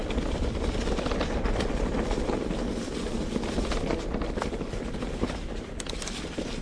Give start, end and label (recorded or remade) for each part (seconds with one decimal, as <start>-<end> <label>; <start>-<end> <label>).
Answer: 0.0-6.6 recorded